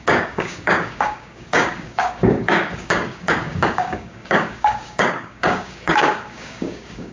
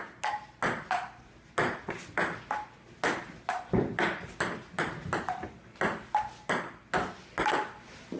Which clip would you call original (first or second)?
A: second